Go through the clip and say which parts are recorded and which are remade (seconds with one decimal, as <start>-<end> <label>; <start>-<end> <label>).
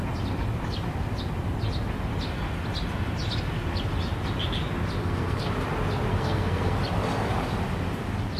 0.0-5.0 recorded; 5.0-5.5 remade; 5.5-6.1 recorded; 6.1-6.8 remade; 6.8-8.4 recorded